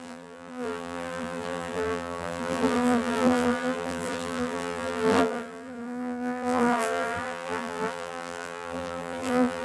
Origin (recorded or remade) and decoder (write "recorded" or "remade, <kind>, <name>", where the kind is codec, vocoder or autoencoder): remade, vocoder, BigVGAN v2